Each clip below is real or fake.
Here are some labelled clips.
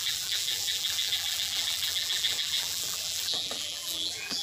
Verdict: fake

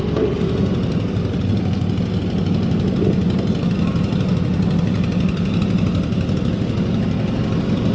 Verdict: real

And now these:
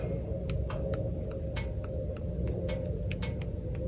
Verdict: real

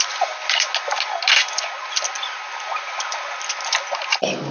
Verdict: real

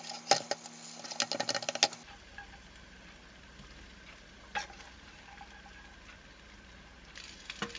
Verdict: real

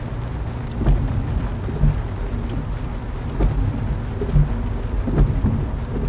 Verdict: real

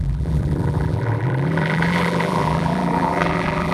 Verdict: fake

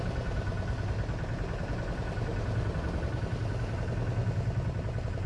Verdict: real